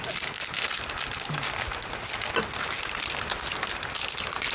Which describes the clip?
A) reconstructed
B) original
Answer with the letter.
B